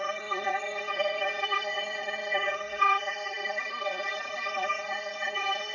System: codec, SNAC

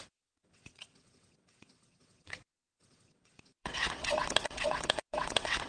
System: vocoder, WaveNeXt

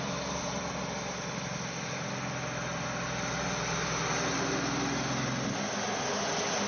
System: none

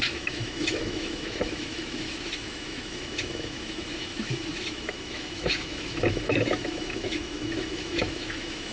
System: autoencoder, DAC-VAE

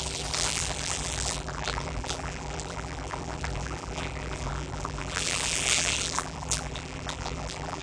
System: vocoder, BigVGAN v2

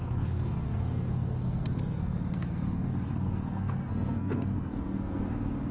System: codec, SNAC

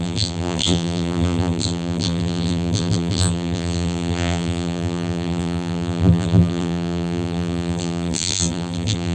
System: vocoder, BigVGAN v2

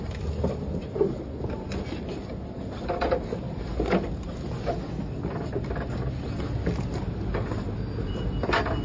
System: none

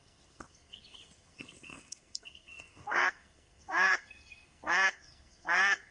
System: codec, SNAC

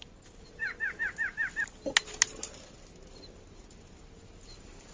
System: none